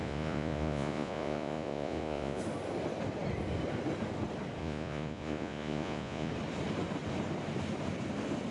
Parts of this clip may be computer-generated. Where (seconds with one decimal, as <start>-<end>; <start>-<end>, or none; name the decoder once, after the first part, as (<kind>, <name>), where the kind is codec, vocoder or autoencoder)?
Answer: 0.0-2.4 (vocoder, Vocos); 4.6-6.3